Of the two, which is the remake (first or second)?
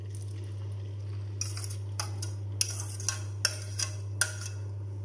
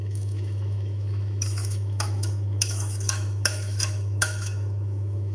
second